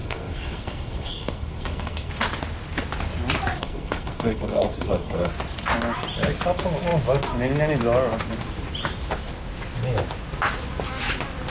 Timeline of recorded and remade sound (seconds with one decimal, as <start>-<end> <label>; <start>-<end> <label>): 0.0-2.1 remade; 2.1-3.6 recorded; 3.6-5.3 remade; 5.3-11.5 recorded